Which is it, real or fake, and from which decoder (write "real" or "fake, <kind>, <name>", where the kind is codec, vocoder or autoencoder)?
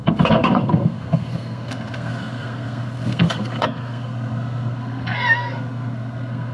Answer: fake, codec, SNAC